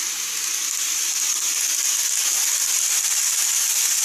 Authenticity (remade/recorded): recorded